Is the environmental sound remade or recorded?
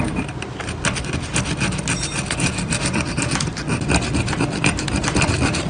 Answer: recorded